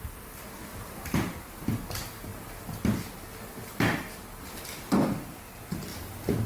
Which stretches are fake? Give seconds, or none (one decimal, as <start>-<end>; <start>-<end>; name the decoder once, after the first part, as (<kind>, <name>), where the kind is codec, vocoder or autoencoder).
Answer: 0.7-1.5 (vocoder, BigVGAN v2)